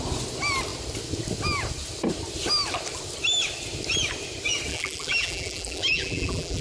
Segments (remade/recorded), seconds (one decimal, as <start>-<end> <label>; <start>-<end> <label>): 0.0-4.7 recorded; 4.7-6.6 remade